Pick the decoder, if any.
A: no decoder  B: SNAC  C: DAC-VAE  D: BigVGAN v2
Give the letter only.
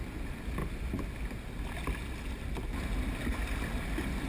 A